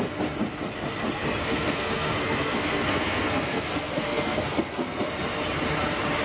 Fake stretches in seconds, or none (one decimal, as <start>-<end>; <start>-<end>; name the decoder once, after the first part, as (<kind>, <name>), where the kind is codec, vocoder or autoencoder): 1.4-5.1 (codec, SNAC)